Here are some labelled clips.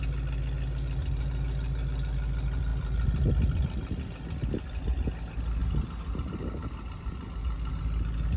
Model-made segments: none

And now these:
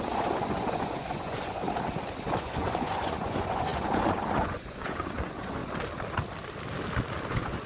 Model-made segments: 0.0-1.6 (vocoder, Vocos); 2.4-5.6; 7.3-7.7